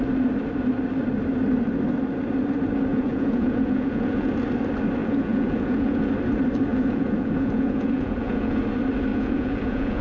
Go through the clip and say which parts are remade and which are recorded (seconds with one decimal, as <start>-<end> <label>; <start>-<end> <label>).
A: 0.0-2.9 recorded; 2.9-4.3 remade; 4.3-5.0 recorded; 5.0-6.1 remade; 6.1-6.7 recorded; 6.7-8.6 remade; 8.6-9.1 recorded; 9.1-10.0 remade